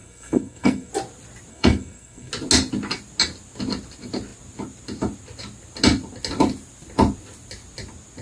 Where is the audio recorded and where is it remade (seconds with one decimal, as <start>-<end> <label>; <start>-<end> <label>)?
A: 0.0-0.9 remade; 0.9-1.5 recorded; 1.5-2.3 remade; 2.3-8.2 recorded